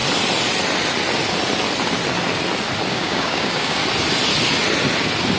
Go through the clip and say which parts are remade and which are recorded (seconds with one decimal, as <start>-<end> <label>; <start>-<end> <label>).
0.0-2.9 recorded; 2.9-3.8 remade; 3.8-5.4 recorded